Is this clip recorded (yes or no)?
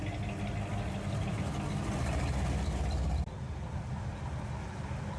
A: yes